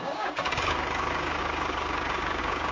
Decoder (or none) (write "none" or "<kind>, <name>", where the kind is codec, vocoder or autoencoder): codec, DAC